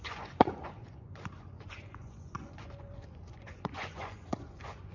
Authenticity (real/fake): fake